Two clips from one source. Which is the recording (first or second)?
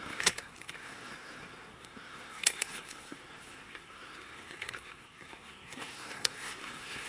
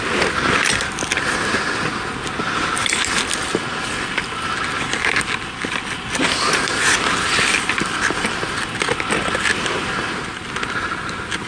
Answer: second